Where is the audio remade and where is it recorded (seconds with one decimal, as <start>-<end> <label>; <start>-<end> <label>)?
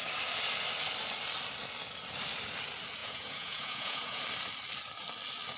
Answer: 0.0-3.0 recorded; 3.0-4.2 remade; 4.2-5.6 recorded